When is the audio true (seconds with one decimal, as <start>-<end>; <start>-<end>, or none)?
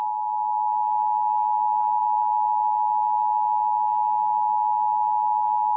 0.0-5.8